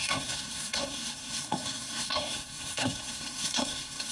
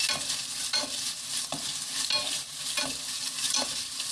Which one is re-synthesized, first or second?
first